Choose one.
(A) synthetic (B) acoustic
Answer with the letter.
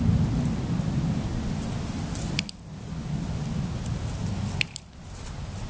B